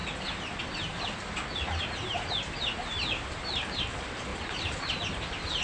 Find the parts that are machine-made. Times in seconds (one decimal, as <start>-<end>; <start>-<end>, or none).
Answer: none